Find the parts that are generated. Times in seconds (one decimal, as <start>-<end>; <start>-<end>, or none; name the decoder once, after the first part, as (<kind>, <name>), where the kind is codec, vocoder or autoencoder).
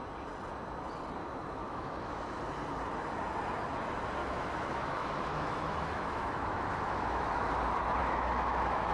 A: 1.2-2.4 (autoencoder, DAC-VAE); 4.2-7.5; 8.0-8.9